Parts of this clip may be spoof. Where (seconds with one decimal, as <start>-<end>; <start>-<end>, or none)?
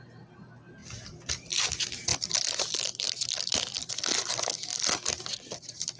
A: 0.8-1.6; 2.1-4.3